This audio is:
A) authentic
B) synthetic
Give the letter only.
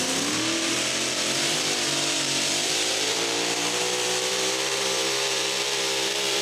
B